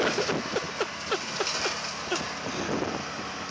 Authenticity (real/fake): real